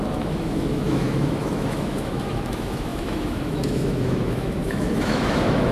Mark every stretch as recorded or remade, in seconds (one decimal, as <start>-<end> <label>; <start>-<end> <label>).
0.0-5.7 remade